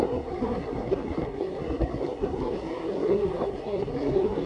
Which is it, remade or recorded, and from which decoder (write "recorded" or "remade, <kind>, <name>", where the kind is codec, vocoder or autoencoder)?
remade, codec, SNAC